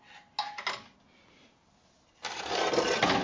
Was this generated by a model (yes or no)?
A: no